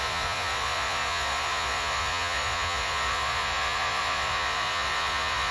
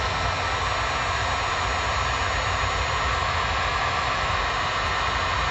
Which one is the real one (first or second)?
second